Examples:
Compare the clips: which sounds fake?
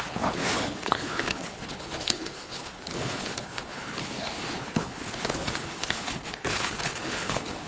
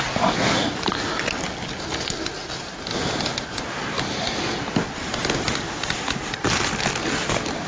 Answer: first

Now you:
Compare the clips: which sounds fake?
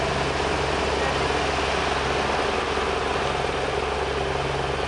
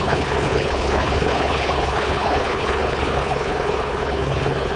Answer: second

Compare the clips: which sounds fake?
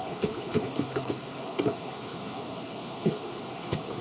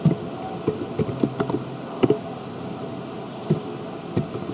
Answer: first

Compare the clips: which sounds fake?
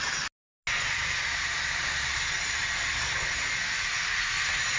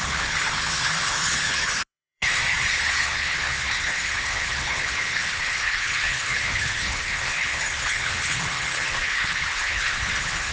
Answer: second